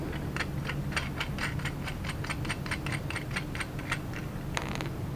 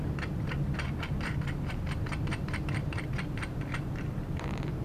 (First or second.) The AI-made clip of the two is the second